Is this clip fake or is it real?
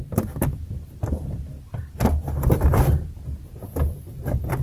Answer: real